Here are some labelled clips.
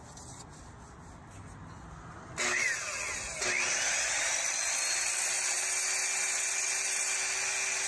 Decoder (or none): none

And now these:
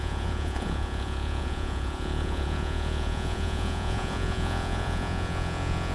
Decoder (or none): vocoder, Vocos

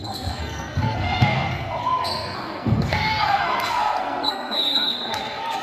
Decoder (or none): codec, SNAC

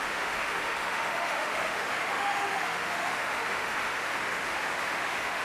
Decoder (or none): autoencoder, DAC-VAE